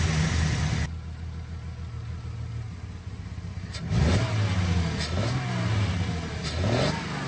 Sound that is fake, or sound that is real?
real